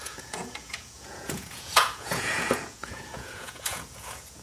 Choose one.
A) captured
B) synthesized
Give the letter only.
B